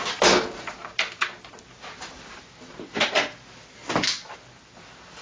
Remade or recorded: recorded